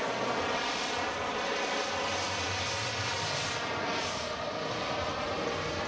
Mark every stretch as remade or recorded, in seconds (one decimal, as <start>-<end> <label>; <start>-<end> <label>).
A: 0.0-5.9 recorded